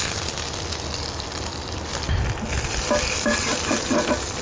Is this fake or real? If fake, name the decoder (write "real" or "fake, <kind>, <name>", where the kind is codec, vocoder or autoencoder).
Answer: real